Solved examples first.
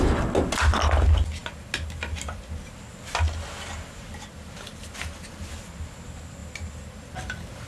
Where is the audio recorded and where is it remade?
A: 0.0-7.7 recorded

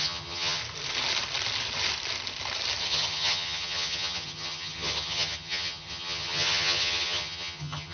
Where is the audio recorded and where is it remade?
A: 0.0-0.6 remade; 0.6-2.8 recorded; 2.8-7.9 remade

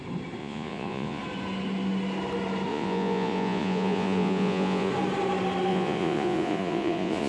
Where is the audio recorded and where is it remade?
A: 0.0-0.4 recorded; 0.4-1.2 remade; 1.2-2.7 recorded; 2.7-4.9 remade; 4.9-5.7 recorded; 5.7-7.3 remade

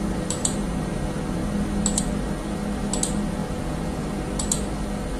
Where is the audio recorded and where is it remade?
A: 0.0-3.4 recorded; 3.4-4.1 remade; 4.1-5.2 recorded

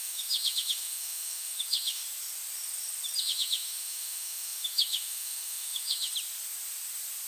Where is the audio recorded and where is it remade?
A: 0.0-2.0 remade; 2.0-3.2 recorded; 3.2-6.1 remade; 6.1-7.3 recorded